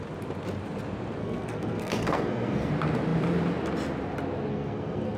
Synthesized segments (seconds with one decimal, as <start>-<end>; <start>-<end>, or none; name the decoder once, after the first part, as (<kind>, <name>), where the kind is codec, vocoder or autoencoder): 1.2-2.7 (codec, SNAC); 4.5-5.2

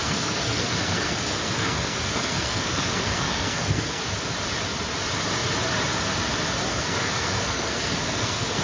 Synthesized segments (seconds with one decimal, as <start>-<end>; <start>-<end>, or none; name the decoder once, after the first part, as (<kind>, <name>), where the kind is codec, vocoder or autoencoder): 0.0-4.0 (codec, SNAC); 6.7-8.6

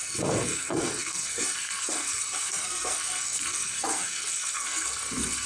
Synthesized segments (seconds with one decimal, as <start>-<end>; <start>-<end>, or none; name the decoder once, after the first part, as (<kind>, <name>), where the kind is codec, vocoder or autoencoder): 0.0-5.5 (codec, SNAC)

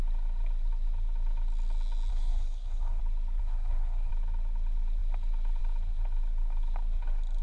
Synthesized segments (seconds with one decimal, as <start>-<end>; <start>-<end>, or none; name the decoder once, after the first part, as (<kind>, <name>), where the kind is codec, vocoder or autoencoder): 2.1-3.0 (codec, SNAC); 3.4-4.1

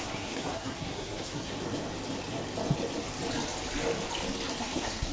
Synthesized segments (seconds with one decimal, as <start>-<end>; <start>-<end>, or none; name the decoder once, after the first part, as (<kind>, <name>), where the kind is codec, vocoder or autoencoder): 0.0-1.5 (codec, SNAC); 4.6-5.1

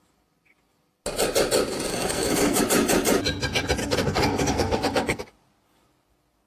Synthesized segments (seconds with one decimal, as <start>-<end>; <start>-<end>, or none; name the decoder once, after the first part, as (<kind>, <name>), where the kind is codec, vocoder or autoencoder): 1.9-2.6 (codec, SNAC); 3.8-5.2

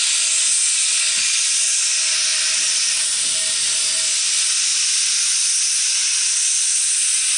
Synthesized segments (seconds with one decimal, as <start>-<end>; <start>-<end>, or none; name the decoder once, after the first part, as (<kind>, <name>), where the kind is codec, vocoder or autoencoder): none